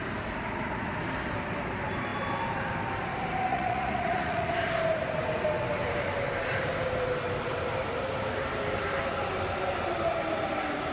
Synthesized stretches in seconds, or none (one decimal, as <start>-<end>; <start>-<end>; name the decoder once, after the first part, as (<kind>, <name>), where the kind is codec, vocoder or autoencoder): 3.5-4.5 (vocoder, Vocos)